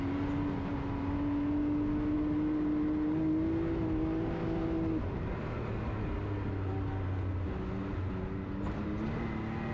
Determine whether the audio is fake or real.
real